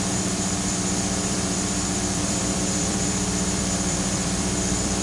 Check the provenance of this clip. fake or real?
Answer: fake